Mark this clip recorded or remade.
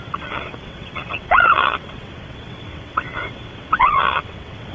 remade